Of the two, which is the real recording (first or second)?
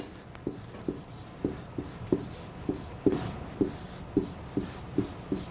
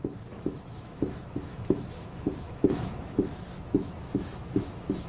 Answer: first